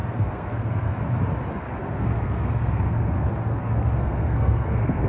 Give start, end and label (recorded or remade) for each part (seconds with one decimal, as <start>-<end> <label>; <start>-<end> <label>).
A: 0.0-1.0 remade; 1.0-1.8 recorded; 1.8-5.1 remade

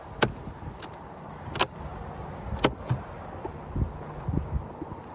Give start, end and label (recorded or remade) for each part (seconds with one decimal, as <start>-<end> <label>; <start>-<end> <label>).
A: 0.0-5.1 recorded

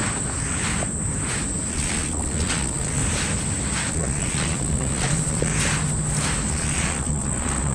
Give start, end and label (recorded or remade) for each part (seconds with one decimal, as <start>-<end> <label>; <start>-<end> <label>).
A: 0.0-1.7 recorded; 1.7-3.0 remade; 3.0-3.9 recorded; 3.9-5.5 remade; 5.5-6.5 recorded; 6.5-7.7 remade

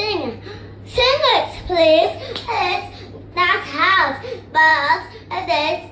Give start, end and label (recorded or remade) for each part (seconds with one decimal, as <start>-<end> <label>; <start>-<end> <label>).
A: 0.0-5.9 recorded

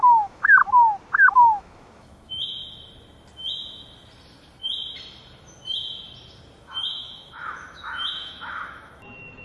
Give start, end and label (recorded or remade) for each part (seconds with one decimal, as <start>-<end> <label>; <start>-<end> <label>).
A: 0.0-0.6 remade; 0.6-1.3 recorded; 1.3-2.6 remade; 2.6-6.6 recorded; 6.6-9.4 remade

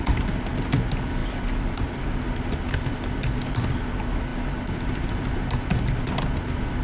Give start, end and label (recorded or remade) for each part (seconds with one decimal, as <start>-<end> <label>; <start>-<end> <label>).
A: 0.0-6.8 recorded